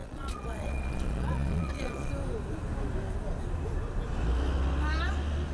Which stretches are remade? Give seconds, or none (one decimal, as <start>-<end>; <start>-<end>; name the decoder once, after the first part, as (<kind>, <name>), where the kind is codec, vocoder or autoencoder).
0.0-2.1 (vocoder, Vocos)

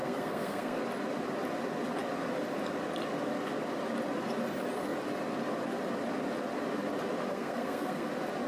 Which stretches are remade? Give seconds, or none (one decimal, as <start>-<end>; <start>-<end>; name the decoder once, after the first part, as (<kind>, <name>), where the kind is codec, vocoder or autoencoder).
0.0-0.8 (codec, SNAC); 7.3-8.1